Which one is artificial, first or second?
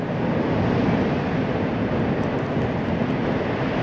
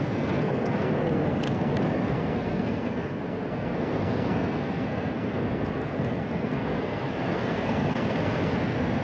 second